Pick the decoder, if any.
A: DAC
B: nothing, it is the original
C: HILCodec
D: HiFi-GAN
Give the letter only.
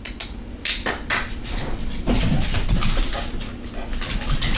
B